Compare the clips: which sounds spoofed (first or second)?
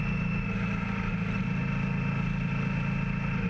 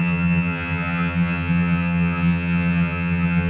second